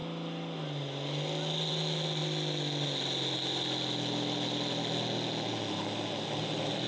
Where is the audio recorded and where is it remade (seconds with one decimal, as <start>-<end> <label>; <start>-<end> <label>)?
0.0-6.9 recorded